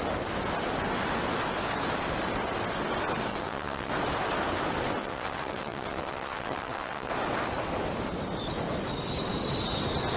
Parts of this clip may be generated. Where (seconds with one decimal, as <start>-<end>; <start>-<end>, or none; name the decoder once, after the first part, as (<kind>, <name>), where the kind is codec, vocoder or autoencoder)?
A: 3.3-3.9 (vocoder, WaveNeXt); 5.0-7.1